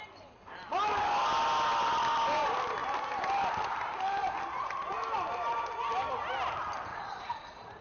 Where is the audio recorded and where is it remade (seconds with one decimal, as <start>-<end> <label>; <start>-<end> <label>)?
0.0-6.9 recorded; 6.9-7.8 remade